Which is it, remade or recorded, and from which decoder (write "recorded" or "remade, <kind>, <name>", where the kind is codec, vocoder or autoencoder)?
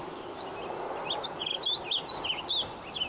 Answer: recorded